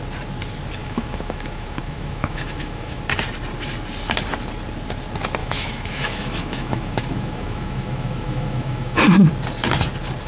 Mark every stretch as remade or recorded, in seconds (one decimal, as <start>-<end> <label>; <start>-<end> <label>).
0.0-0.8 recorded; 0.8-3.0 remade; 3.0-5.4 recorded; 5.4-9.0 remade; 9.0-10.3 recorded